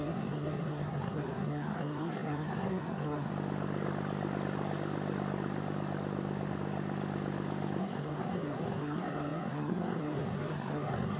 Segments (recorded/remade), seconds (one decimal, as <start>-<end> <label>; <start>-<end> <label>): 0.0-3.3 remade; 3.3-7.8 recorded; 7.8-11.2 remade